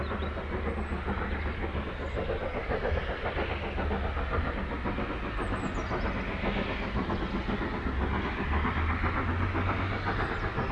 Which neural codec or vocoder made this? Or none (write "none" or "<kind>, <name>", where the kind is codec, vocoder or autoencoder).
none